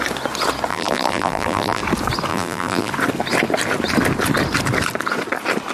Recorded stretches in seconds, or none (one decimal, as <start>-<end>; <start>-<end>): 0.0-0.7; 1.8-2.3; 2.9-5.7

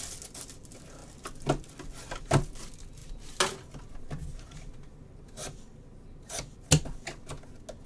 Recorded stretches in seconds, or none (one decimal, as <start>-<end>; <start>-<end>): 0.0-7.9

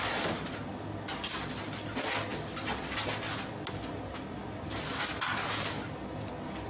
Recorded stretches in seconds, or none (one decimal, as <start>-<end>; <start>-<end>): 0.0-6.7